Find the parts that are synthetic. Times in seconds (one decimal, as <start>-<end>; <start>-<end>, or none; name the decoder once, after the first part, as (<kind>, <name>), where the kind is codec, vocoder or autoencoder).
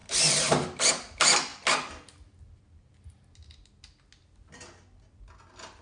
0.0-0.9 (vocoder, BigVGAN v2)